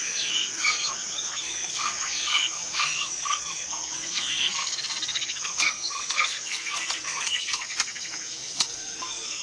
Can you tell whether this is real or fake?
fake